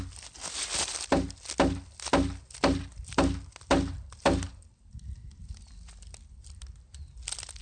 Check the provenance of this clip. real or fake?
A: real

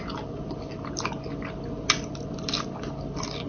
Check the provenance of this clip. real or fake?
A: real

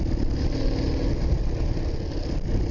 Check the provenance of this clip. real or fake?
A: real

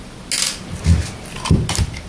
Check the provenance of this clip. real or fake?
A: real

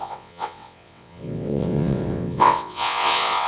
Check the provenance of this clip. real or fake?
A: fake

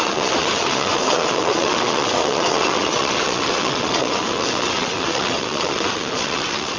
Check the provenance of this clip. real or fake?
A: fake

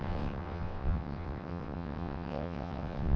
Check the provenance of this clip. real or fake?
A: fake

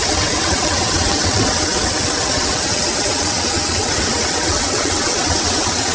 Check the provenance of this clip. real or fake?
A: fake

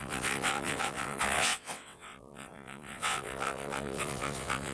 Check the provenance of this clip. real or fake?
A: fake